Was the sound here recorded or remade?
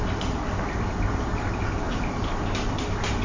recorded